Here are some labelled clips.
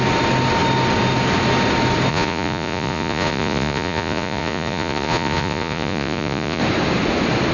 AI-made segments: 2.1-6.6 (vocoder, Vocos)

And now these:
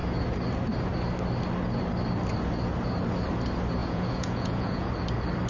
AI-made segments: 3.8-4.9 (vocoder, Vocos)

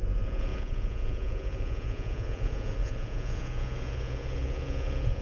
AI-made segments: 0.0-5.2 (vocoder, Vocos)

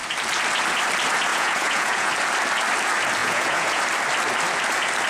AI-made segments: 1.3-2.1 (vocoder, Vocos); 3.2-3.8

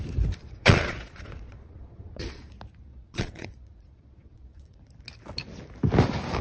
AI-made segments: 0.4-2.4 (vocoder, Vocos); 2.9-4.8

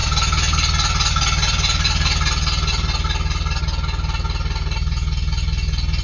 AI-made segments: none

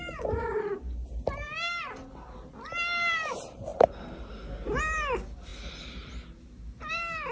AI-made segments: none

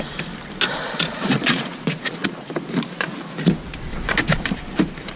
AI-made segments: 0.8-2.5 (vocoder, Vocos); 3.9-4.4